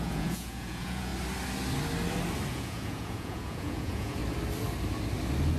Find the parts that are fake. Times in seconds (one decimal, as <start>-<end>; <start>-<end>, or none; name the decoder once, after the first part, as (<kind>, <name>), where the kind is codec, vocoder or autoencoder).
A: 0.0-1.1 (vocoder, Vocos); 2.5-4.2